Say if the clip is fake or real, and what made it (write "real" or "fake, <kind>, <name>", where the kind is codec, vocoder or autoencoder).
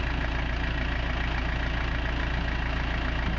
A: real